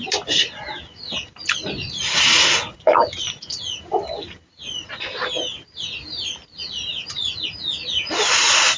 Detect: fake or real real